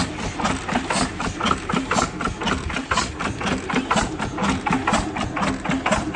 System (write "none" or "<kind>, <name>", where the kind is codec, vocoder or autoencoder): none